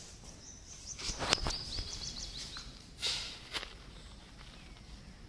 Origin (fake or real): fake